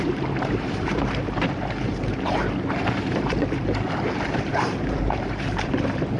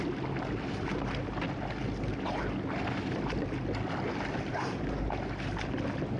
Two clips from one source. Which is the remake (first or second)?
first